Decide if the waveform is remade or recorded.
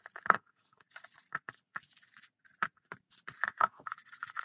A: remade